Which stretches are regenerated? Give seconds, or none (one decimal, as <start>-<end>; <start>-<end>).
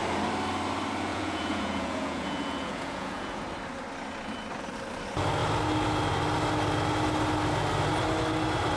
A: 1.1-3.4